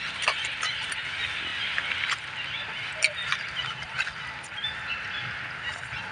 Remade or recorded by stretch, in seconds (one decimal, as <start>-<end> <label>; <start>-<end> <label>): 0.0-6.1 recorded